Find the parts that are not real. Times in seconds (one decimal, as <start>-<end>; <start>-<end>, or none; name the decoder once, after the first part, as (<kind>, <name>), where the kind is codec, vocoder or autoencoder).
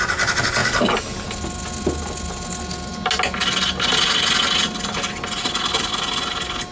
none